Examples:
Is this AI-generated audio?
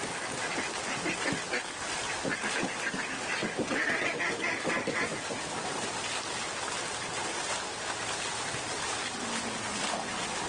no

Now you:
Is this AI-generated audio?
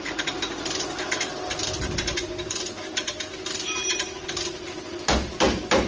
no